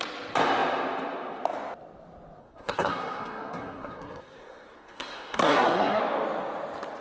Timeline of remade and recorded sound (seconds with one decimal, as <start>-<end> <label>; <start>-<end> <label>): 0.0-2.4 recorded; 2.4-6.0 remade; 6.0-7.0 recorded